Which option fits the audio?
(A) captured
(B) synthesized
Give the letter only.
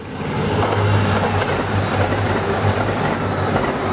A